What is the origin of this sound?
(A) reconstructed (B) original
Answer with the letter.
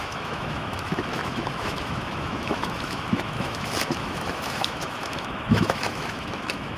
A